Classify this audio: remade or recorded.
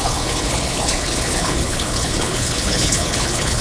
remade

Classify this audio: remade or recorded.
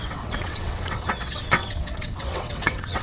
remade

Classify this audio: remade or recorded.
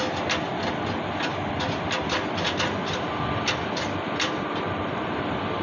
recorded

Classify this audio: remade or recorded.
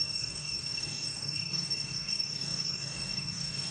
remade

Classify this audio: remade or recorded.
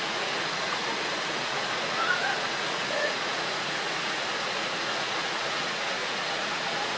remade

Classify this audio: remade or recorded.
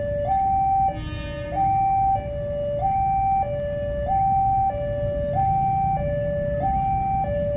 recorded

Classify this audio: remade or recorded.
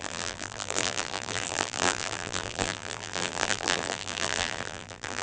remade